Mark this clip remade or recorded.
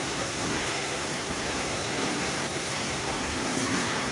remade